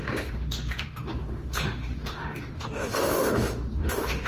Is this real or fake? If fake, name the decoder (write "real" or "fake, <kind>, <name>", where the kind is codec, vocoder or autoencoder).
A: fake, autoencoder, DAC-VAE